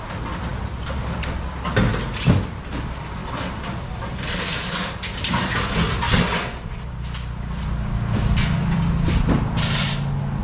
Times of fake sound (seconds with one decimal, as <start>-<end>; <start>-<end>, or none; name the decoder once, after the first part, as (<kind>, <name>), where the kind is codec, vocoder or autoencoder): none